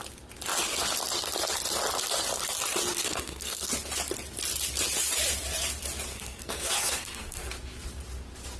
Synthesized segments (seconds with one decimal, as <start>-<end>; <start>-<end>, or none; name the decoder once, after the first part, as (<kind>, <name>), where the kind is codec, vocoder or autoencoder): 2.9-3.7 (codec, SNAC); 6.1-7.5